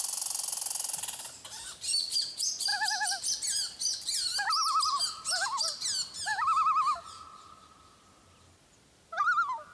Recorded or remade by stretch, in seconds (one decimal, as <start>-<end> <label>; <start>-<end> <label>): 0.0-9.7 recorded